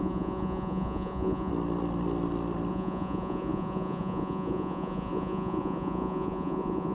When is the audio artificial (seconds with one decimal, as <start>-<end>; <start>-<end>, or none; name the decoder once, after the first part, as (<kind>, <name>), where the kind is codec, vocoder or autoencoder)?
0.0-1.5 (vocoder, Vocos); 2.7-6.9

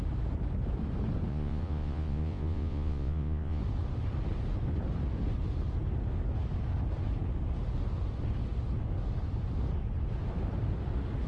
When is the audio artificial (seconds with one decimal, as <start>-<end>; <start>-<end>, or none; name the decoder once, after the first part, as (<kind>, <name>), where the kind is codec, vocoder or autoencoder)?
1.3-3.6 (vocoder, Vocos)

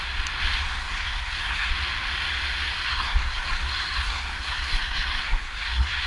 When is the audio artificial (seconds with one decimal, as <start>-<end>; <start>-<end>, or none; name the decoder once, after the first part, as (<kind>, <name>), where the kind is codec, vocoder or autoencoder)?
0.8-1.7 (codec, SNAC); 2.7-6.1

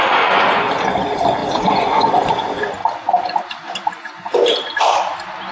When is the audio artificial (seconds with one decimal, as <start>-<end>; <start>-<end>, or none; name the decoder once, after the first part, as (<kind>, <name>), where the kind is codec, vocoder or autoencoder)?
0.0-2.8 (vocoder, Vocos); 3.9-4.4

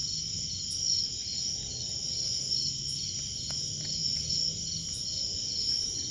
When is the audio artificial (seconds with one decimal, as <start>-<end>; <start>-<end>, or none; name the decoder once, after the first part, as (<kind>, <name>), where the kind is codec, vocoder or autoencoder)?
none